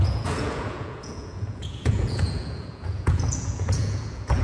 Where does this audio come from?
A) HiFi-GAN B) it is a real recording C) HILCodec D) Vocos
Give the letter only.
D